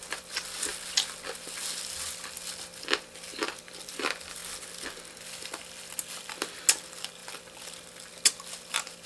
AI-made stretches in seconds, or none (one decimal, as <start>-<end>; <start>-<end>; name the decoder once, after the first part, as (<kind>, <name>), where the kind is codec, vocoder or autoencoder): none